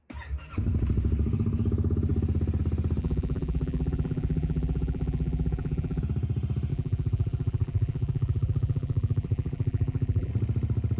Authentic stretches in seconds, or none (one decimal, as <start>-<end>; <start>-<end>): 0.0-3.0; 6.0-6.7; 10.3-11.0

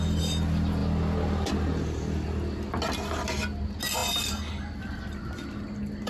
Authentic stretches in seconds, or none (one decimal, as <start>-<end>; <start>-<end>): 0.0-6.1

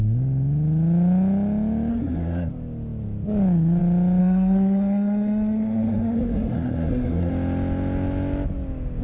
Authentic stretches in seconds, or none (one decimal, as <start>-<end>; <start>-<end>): 0.0-1.9; 2.5-4.2; 7.3-9.0

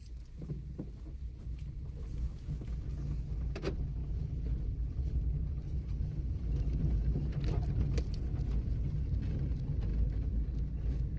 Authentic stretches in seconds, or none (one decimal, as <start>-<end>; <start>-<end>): 0.0-11.2